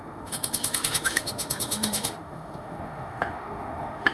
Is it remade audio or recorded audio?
remade